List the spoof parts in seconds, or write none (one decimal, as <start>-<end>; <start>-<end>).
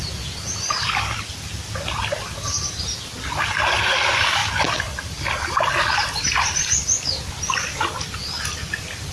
none